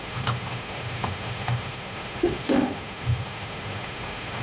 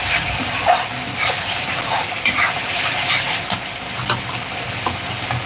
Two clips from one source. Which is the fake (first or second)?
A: first